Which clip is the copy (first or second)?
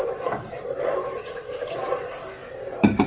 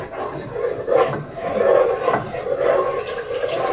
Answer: first